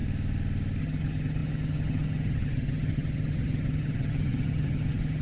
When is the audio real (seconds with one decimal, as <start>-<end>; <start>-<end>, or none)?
0.0-0.8